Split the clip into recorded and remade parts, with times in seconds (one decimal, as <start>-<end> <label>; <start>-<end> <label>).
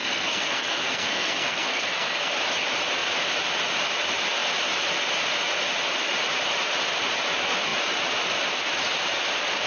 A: 0.0-2.3 remade; 2.3-9.7 recorded